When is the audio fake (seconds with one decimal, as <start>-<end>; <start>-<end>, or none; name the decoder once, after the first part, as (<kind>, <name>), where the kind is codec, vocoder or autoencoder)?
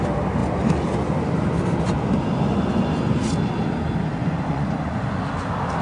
4.2-5.2 (vocoder, Vocos)